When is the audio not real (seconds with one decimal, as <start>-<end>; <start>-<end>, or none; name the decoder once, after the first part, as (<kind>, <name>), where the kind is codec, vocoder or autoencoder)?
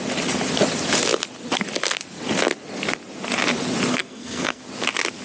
3.9-4.6 (codec, SNAC)